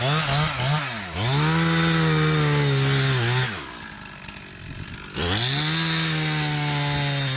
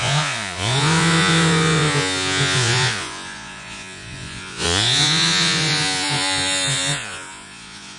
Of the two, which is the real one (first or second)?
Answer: first